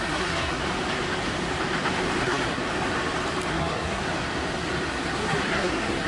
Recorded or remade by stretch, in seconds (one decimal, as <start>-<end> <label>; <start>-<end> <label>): 0.0-0.6 remade; 0.6-2.2 recorded; 2.2-2.6 remade; 2.6-3.5 recorded; 3.5-4.0 remade; 4.0-4.9 recorded; 4.9-6.1 remade